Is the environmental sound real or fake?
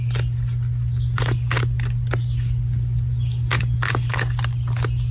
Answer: real